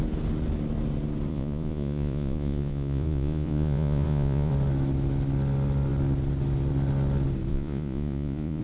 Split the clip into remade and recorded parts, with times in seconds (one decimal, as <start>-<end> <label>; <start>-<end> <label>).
0.0-1.3 recorded; 1.3-4.5 remade; 4.5-7.5 recorded; 7.5-8.6 remade